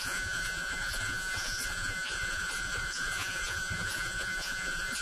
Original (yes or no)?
no